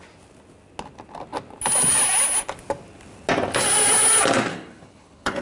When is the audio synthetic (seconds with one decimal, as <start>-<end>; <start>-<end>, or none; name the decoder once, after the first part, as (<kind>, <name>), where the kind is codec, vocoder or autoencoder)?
4.5-5.4 (codec, HILCodec)